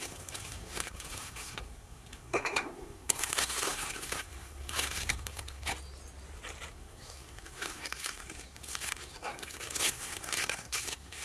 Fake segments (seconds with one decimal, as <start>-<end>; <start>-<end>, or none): 0.0-5.7; 6.7-11.2